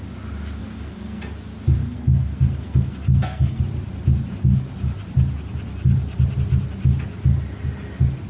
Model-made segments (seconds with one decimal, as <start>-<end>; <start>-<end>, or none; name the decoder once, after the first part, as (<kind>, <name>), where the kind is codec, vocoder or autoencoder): 0.6-1.2 (codec, SNAC); 1.8-3.6